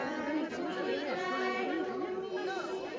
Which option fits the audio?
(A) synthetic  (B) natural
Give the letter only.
B